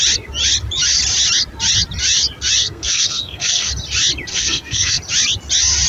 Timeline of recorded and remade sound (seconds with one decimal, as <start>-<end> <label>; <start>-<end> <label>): 0.0-2.6 recorded; 2.6-3.7 remade; 3.7-4.3 recorded; 4.3-5.0 remade; 5.0-5.9 recorded